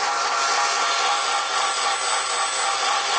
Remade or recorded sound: recorded